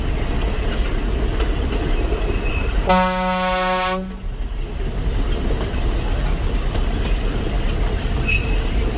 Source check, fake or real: real